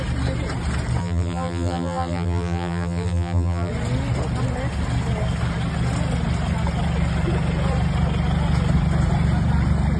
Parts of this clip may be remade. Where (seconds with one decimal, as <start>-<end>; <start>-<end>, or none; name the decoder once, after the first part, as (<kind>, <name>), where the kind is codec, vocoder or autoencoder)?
1.0-3.7 (vocoder, BigVGAN v2)